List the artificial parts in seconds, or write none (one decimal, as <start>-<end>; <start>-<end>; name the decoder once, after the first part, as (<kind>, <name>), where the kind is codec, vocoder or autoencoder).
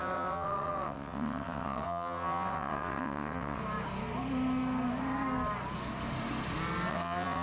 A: 0.0-3.6 (vocoder, WaveNeXt); 6.9-7.4